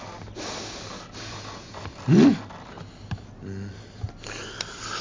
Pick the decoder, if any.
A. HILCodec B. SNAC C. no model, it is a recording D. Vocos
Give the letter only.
C